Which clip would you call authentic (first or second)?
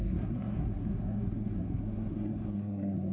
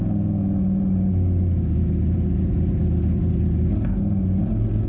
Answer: second